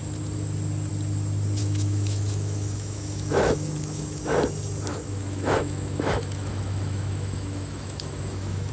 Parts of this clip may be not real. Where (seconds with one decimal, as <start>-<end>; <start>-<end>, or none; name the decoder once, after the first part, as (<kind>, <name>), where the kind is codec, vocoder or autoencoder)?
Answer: 1.6-4.2 (autoencoder, DAC-VAE); 4.9-8.7

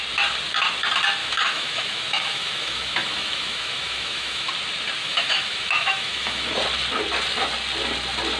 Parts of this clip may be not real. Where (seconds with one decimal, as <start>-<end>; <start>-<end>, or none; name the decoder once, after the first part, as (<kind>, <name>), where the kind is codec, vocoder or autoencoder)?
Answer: 1.2-4.5 (autoencoder, DAC-VAE); 5.0-6.5

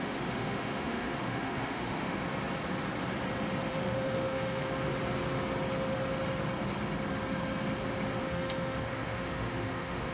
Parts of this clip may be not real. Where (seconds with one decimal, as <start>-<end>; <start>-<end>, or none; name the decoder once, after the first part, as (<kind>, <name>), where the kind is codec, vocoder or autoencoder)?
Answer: 0.0-2.2 (autoencoder, DAC-VAE); 3.7-4.9; 8.2-10.1

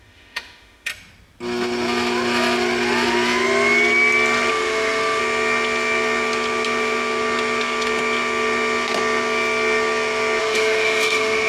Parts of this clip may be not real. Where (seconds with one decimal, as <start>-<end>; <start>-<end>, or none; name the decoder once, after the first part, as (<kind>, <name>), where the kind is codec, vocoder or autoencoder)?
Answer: 0.0-0.9 (autoencoder, DAC-VAE); 4.5-5.2; 10.4-11.5

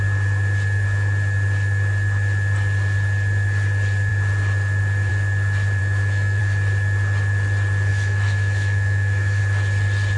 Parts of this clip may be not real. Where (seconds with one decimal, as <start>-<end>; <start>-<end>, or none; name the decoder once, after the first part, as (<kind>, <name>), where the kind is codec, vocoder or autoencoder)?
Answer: 5.8-6.4 (autoencoder, DAC-VAE); 7.9-9.4

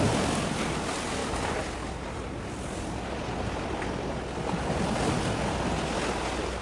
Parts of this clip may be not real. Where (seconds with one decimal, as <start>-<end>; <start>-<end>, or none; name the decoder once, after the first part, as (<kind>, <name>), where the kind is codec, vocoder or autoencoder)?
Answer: none

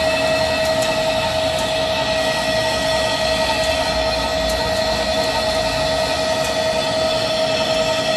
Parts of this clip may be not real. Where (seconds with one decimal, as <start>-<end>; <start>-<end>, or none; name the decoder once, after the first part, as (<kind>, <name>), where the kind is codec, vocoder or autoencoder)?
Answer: none